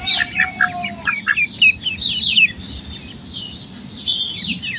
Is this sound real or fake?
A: real